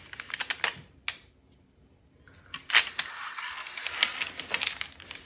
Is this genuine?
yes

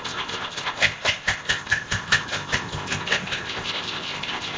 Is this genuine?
no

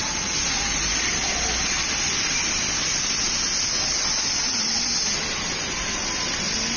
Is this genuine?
yes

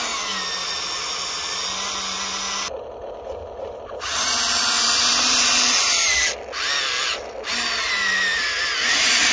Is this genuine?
yes